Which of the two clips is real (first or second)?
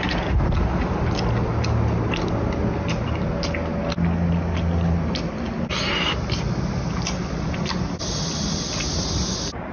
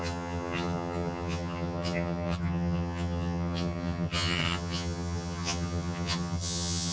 first